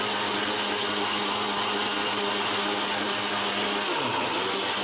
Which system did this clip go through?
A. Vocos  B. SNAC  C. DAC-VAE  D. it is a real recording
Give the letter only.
D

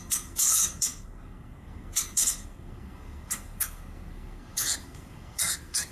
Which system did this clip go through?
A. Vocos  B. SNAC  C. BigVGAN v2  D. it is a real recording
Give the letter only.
B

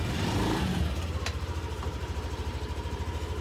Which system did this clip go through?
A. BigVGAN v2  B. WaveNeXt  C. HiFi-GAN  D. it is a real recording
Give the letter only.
A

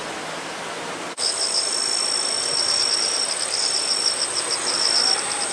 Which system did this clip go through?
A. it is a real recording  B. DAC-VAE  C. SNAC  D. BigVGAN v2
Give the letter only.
A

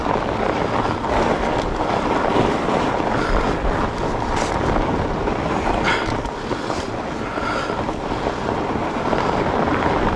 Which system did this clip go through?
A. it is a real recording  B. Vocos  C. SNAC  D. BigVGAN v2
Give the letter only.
A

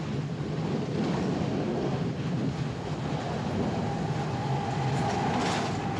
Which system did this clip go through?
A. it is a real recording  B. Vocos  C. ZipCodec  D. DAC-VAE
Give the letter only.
A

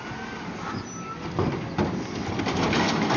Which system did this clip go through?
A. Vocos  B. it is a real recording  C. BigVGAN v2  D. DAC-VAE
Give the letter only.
B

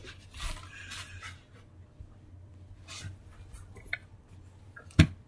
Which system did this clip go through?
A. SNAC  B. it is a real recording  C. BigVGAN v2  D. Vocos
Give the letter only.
B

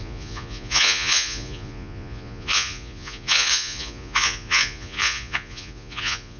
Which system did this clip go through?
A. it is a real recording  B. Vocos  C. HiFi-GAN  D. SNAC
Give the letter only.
B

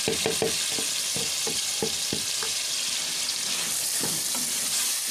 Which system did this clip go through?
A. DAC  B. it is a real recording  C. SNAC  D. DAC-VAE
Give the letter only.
B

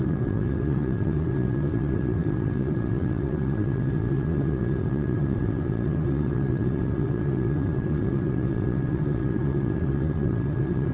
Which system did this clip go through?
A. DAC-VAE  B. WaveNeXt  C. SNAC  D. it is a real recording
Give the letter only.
B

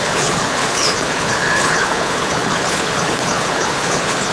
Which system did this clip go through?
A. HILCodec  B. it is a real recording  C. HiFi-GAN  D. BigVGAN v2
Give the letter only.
A